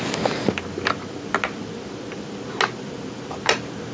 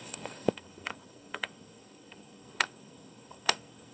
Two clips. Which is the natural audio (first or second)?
first